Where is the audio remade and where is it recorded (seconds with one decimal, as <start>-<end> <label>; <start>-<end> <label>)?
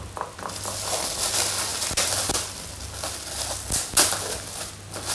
0.0-5.1 recorded